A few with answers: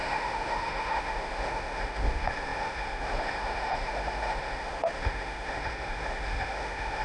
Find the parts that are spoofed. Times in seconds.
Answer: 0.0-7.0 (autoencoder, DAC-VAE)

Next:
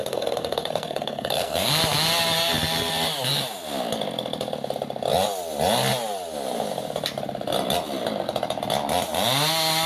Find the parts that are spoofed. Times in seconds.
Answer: 0.0-1.7 (codec, SNAC)

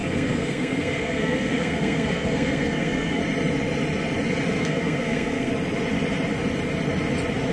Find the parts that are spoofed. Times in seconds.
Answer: 0.0-3.2 (codec, SNAC); 4.6-5.5

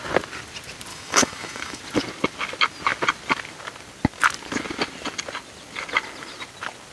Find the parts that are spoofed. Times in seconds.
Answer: 0.9-1.8 (autoencoder, DAC-VAE)

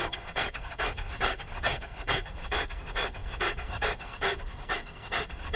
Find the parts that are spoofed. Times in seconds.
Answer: 0.0-5.6 (codec, SNAC)

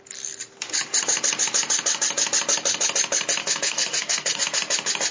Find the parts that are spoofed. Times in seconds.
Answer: 3.4-4.4 (codec, SNAC)